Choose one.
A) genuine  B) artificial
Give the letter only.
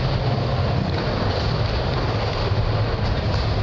A